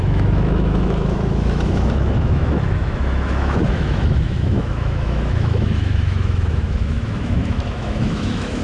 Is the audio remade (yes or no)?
yes